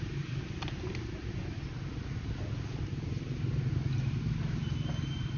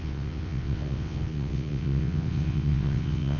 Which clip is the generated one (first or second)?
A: second